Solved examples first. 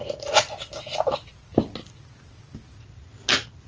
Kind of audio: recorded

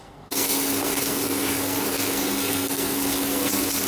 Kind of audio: remade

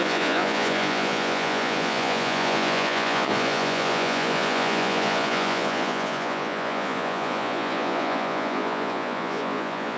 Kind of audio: remade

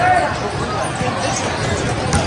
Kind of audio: recorded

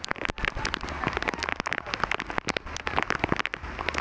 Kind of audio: recorded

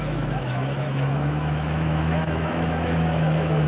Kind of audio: remade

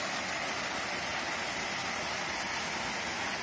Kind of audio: recorded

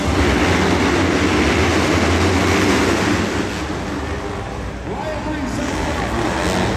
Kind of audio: recorded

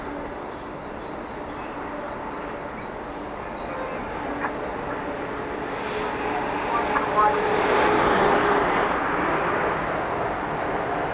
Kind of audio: recorded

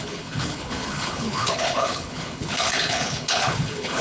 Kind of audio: remade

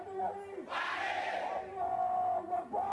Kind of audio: recorded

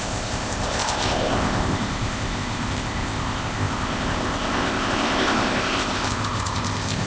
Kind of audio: remade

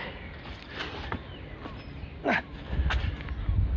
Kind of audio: recorded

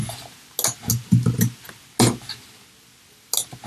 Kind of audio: recorded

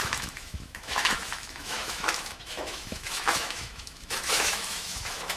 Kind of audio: remade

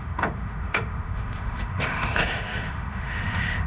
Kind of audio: remade